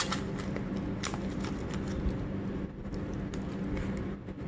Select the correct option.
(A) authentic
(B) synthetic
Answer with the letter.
A